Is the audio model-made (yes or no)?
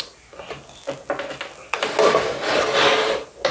no